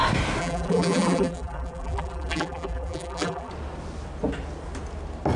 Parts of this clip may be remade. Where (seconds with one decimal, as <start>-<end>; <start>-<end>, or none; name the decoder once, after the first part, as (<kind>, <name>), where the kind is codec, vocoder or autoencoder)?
0.4-3.5 (vocoder, BigVGAN v2)